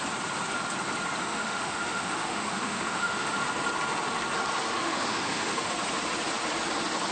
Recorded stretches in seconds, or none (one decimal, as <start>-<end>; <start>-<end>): 0.0-1.2; 3.4-4.8; 5.7-7.1